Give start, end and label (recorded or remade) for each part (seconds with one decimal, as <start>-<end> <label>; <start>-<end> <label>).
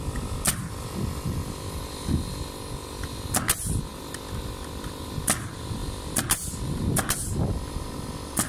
0.0-5.8 recorded; 5.8-6.8 remade; 6.8-8.5 recorded